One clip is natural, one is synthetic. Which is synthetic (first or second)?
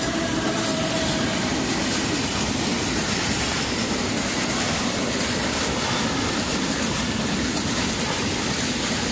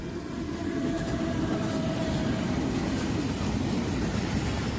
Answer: first